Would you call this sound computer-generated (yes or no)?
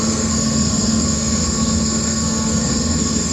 yes